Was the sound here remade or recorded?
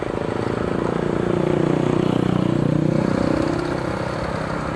recorded